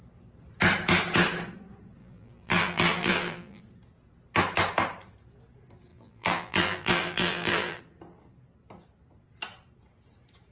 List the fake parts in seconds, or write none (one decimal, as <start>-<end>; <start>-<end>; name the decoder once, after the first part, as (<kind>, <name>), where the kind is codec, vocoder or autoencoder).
2.0-3.6 (vocoder, BigVGAN v2); 5.9-7.8